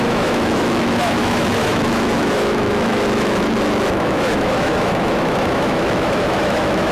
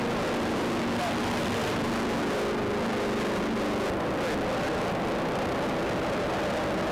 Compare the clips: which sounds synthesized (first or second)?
first